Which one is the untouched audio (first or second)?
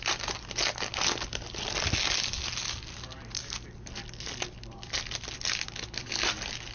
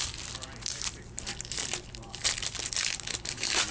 first